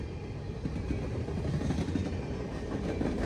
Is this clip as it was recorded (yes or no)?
yes